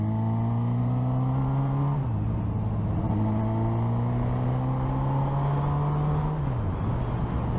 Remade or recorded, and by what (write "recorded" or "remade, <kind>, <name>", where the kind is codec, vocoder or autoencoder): recorded